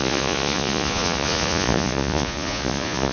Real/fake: fake